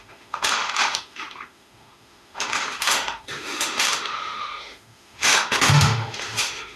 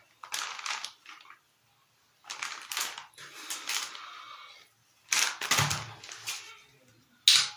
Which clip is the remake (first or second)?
first